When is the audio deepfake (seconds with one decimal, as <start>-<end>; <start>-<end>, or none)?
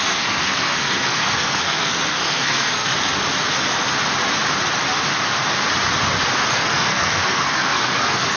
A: 0.0-2.9; 6.5-8.4